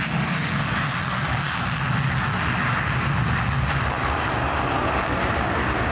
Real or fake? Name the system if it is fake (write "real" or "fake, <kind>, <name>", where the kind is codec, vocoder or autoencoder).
real